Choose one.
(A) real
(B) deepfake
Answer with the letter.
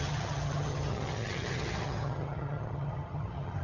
B